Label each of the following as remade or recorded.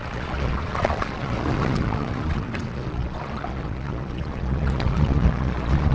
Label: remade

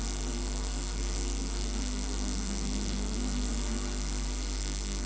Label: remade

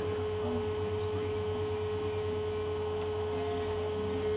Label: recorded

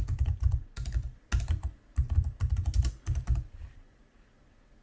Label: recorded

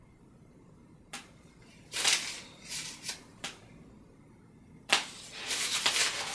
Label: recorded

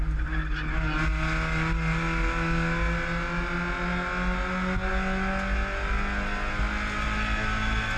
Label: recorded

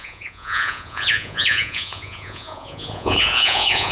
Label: remade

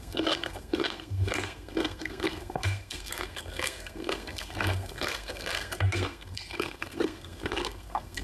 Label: remade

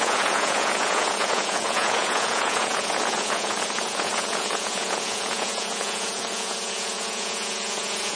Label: remade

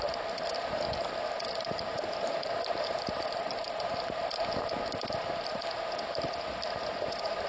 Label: recorded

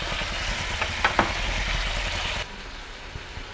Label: recorded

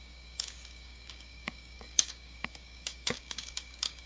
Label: remade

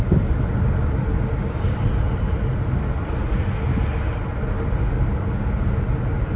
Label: recorded